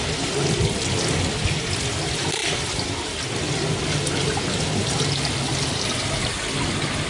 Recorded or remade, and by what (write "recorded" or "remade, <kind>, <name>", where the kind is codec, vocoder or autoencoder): recorded